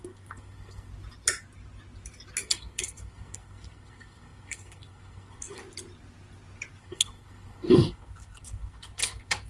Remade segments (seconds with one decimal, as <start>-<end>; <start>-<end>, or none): 0.0-0.9; 2.4-5.6; 6.8-9.5